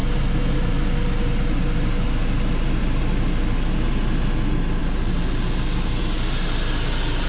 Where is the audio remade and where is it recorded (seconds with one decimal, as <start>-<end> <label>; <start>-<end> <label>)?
0.0-7.3 recorded